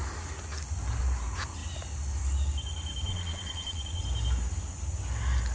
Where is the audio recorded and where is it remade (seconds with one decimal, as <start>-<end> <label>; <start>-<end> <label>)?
0.0-3.1 recorded; 3.1-4.0 remade; 4.0-5.5 recorded